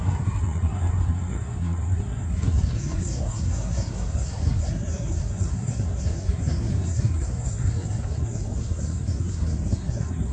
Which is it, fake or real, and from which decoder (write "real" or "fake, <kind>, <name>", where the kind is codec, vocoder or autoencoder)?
fake, codec, SNAC